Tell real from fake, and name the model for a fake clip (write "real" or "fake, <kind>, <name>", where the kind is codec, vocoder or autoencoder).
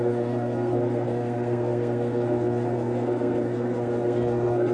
fake, codec, SNAC